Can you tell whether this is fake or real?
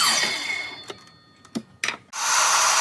real